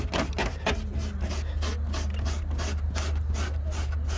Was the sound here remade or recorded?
recorded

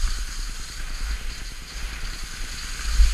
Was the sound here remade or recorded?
recorded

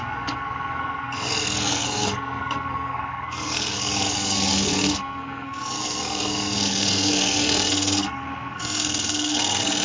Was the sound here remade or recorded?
remade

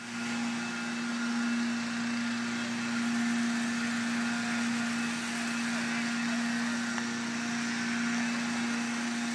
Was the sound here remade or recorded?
recorded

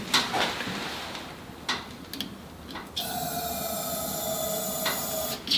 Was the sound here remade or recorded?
recorded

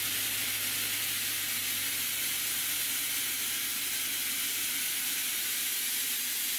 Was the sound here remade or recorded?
recorded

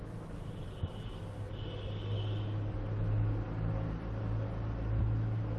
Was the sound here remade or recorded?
recorded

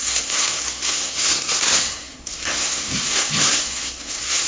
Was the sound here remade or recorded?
remade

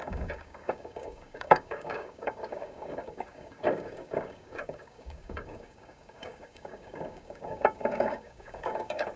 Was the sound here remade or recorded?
remade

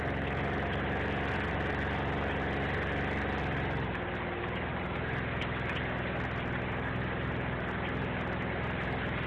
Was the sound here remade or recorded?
recorded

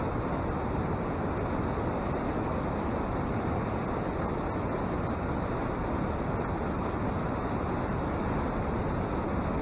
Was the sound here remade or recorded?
recorded